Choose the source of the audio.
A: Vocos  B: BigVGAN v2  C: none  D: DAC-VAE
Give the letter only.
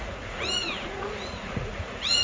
A